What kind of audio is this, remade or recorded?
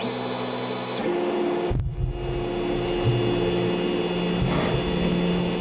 recorded